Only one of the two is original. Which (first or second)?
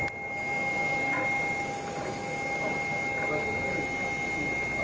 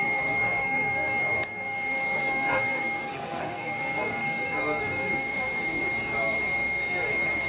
first